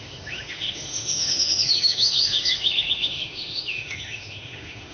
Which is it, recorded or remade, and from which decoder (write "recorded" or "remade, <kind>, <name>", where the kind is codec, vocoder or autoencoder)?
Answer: remade, autoencoder, DAC-VAE